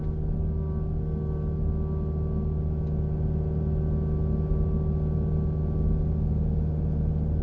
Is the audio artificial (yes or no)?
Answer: no